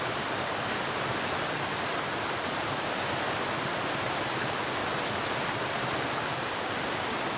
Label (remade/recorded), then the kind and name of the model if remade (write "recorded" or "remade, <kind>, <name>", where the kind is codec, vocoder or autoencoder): recorded